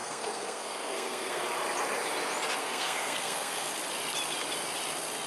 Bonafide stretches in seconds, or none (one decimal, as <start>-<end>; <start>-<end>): 1.4-2.6; 3.7-5.3